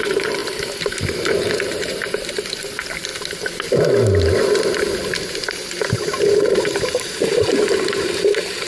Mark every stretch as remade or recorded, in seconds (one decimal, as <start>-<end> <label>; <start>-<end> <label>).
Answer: 0.0-3.1 remade; 3.1-5.5 recorded; 5.5-8.7 remade